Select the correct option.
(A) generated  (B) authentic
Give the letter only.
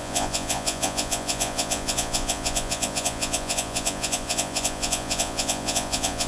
A